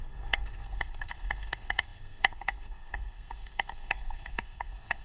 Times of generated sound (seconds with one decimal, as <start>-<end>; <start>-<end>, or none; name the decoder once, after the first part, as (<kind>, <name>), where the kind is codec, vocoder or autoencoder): 0.0-5.0 (codec, SNAC)